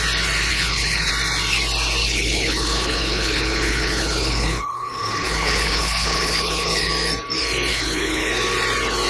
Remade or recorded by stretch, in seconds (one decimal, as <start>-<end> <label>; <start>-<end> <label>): 0.0-0.5 recorded; 0.5-1.1 remade; 1.1-2.0 recorded; 2.0-6.9 remade; 6.9-7.7 recorded; 7.7-8.3 remade; 8.3-9.1 recorded